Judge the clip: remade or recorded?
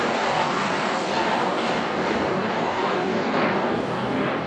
remade